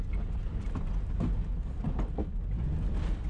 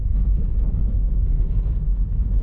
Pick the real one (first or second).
first